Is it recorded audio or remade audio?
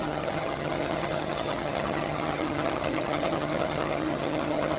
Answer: remade